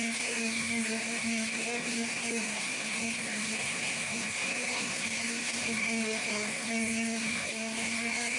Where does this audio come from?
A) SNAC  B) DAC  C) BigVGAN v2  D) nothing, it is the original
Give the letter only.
A